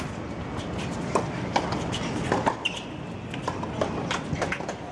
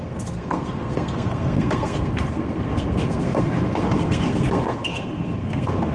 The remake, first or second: second